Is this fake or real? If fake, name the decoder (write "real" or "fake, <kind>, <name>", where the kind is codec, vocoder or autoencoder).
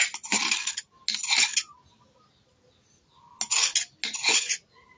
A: real